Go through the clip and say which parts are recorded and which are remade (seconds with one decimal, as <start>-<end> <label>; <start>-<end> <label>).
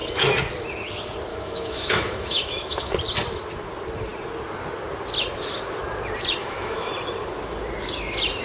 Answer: 0.0-1.3 recorded; 1.3-2.9 remade; 2.9-6.4 recorded; 6.4-6.9 remade; 6.9-8.4 recorded